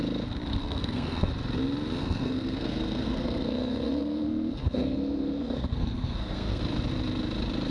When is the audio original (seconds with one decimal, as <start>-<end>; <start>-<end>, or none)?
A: 0.0-0.6; 1.3-2.0; 6.6-7.7

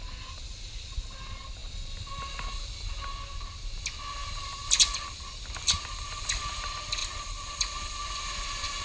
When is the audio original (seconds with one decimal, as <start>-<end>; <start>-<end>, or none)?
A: 0.0-4.2; 6.6-7.0; 8.1-8.8

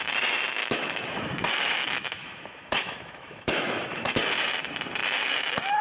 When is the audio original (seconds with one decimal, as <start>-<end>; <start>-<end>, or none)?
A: 0.0-0.6; 4.1-5.8

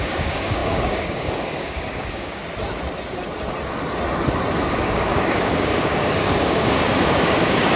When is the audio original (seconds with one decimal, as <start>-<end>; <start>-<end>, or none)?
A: 2.4-4.7

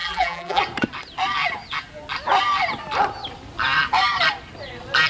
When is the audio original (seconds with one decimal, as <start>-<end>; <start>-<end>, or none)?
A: 0.6-5.1

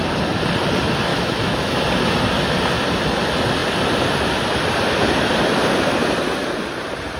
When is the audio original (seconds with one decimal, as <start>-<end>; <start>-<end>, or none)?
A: 0.0-1.1; 1.8-7.2